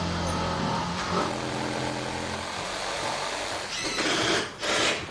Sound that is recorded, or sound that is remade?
recorded